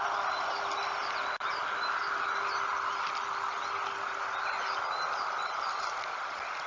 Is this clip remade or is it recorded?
recorded